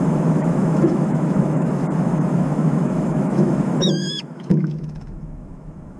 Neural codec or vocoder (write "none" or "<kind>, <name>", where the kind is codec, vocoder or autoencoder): autoencoder, DAC-VAE